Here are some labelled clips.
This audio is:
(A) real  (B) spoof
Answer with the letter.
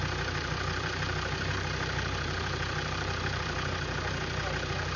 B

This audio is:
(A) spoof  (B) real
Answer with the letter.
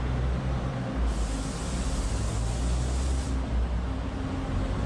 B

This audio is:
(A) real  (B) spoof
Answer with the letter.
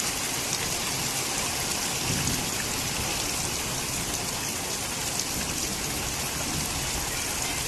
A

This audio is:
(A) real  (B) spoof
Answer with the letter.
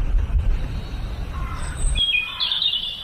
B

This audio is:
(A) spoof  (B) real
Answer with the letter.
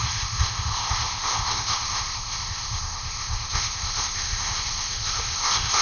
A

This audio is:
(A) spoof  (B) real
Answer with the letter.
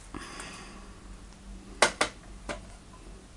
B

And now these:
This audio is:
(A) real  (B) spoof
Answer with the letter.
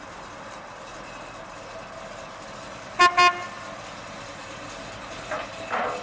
A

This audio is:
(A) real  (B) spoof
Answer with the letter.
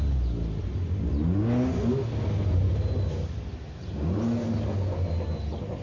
A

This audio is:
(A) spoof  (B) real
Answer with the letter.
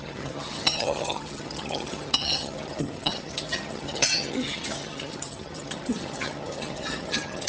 A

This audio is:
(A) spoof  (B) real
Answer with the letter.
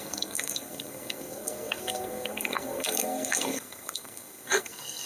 A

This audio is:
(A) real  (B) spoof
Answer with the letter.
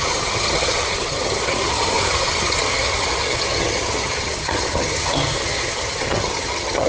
B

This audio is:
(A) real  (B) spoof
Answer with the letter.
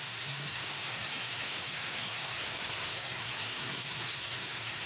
B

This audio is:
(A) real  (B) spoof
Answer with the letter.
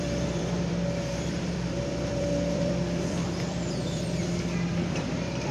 B